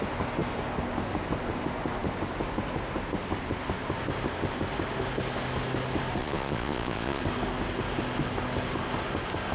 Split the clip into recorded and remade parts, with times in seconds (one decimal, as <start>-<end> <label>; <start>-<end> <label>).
0.0-6.2 recorded; 6.2-7.2 remade; 7.2-9.5 recorded